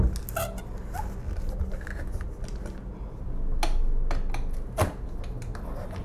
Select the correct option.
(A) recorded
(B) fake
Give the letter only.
A